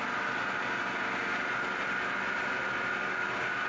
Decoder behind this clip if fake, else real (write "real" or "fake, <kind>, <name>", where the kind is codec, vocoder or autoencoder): real